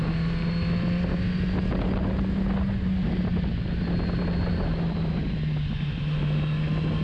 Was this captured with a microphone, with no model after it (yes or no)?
yes